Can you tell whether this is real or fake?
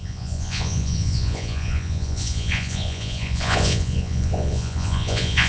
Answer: fake